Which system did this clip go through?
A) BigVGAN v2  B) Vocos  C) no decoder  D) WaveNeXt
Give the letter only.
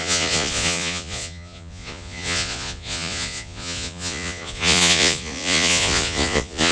B